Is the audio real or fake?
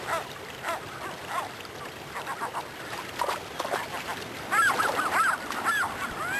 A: fake